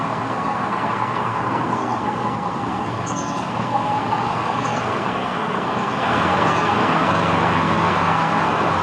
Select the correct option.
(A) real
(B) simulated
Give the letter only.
B